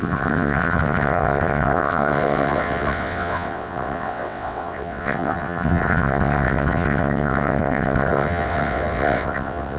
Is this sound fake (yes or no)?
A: yes